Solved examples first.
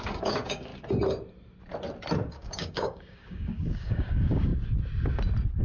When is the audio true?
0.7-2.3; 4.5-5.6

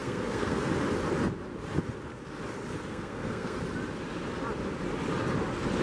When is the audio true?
0.7-2.9; 3.6-5.8

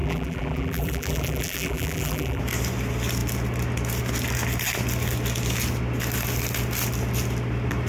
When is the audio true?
2.4-7.9

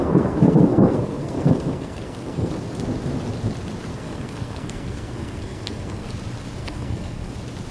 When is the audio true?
2.5-3.9; 6.1-6.6; 7.3-7.7

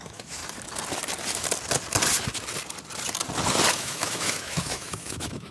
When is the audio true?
0.4-3.7

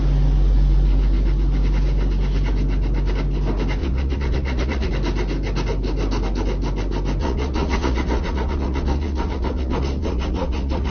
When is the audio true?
0.0-3.8; 4.9-7.2

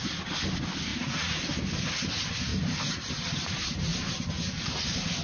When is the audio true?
0.0-0.9; 1.4-5.2